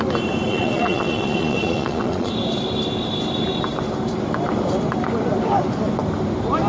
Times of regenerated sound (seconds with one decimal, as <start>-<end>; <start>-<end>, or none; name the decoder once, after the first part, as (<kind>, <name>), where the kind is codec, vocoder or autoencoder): 0.5-2.3 (vocoder, Vocos)